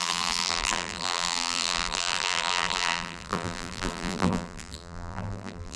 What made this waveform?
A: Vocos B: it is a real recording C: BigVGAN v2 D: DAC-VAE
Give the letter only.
C